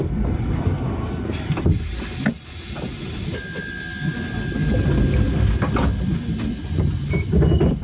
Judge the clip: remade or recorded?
recorded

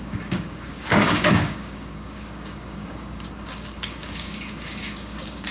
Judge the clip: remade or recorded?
remade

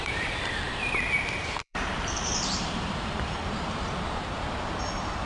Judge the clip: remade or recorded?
remade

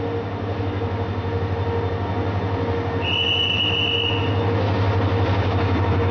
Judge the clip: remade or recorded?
recorded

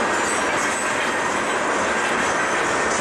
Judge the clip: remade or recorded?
recorded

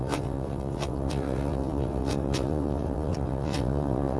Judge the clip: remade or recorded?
remade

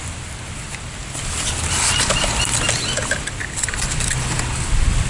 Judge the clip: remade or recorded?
recorded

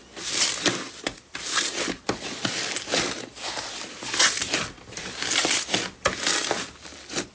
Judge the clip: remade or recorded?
recorded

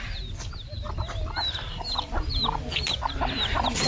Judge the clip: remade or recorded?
recorded